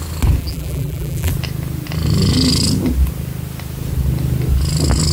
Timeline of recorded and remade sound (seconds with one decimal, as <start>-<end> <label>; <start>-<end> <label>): 0.0-0.4 recorded; 0.4-1.3 remade; 1.3-5.1 recorded